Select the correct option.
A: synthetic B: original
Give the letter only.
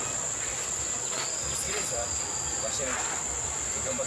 A